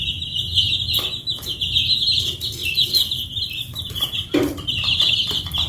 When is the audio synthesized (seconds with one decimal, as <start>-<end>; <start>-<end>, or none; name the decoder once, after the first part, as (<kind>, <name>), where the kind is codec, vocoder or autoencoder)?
2.6-5.7 (vocoder, BigVGAN v2)